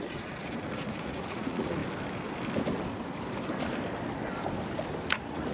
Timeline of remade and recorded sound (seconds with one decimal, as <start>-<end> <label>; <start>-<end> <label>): 0.0-1.8 remade; 1.8-5.1 recorded; 5.1-5.5 remade